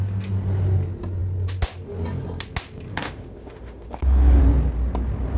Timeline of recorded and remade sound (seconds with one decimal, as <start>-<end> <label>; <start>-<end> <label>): 0.0-2.9 recorded; 2.9-4.4 remade; 4.4-5.4 recorded